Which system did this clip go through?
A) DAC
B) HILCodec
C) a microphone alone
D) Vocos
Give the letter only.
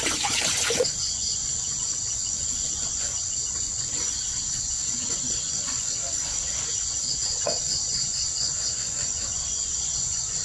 D